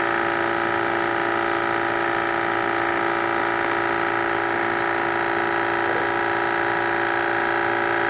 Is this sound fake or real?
real